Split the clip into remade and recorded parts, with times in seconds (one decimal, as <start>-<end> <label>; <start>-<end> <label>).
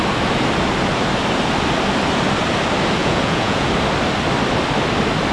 0.0-3.0 recorded; 3.0-3.7 remade; 3.7-5.3 recorded